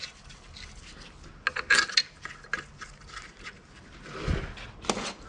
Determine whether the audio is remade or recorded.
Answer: recorded